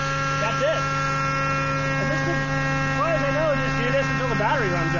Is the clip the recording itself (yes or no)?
yes